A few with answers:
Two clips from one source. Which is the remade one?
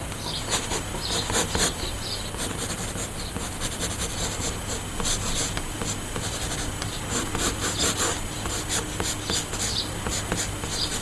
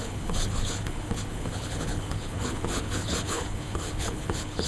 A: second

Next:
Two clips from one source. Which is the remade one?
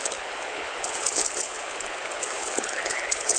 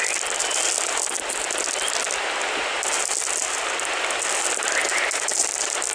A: first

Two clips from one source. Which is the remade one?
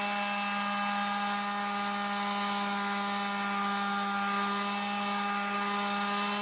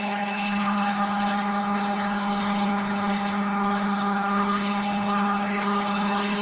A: second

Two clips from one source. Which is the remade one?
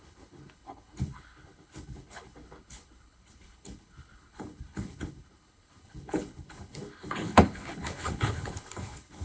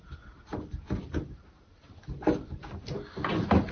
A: first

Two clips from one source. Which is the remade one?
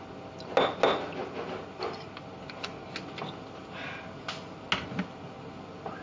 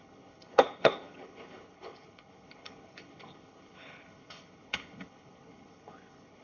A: second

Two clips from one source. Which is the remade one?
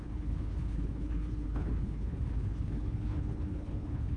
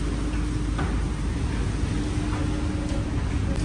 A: first